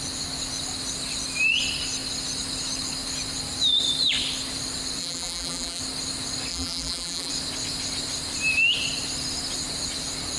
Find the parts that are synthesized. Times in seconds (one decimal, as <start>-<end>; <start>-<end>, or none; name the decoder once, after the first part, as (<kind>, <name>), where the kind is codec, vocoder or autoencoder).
5.0-5.8 (vocoder, BigVGAN v2); 6.5-7.3